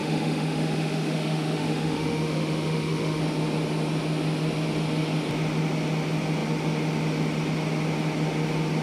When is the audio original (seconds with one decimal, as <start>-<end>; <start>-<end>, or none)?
3.2-8.8